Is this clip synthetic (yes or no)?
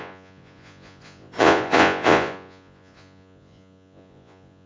yes